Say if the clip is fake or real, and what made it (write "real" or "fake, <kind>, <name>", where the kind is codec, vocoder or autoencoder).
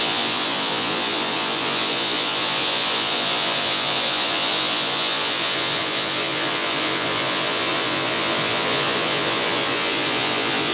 fake, vocoder, Vocos